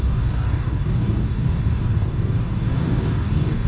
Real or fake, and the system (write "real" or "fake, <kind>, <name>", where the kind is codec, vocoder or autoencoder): fake, codec, DAC